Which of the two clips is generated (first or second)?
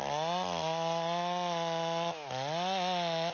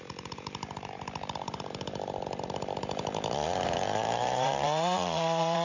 second